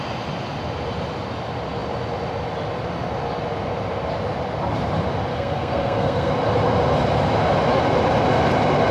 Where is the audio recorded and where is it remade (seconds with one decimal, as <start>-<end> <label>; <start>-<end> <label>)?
0.0-5.3 recorded; 5.3-6.3 remade; 6.3-8.9 recorded